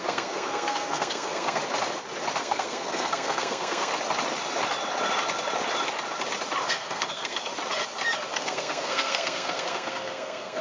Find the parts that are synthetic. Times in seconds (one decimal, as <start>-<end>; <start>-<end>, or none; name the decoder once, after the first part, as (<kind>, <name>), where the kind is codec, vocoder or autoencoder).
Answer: 0.0-1.6 (codec, SNAC); 2.4-3.9; 6.6-7.5; 8.3-10.6